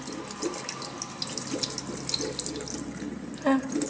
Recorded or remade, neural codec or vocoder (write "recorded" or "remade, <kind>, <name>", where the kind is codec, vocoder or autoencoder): recorded